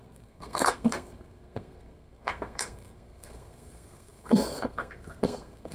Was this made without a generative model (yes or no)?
no